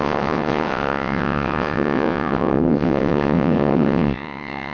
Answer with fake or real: fake